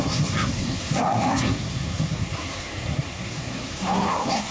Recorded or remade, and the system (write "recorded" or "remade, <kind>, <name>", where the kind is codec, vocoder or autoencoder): remade, codec, SNAC